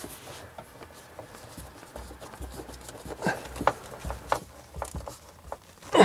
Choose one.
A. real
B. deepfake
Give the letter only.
A